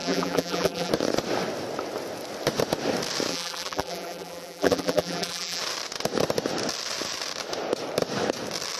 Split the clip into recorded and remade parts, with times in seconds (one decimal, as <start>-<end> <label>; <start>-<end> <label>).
0.0-0.9 remade; 0.9-3.3 recorded; 3.3-5.6 remade; 5.6-8.8 recorded